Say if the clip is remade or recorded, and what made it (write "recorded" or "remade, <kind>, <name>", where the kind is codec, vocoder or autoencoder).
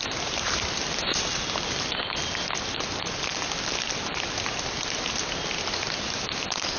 remade, vocoder, BigVGAN v2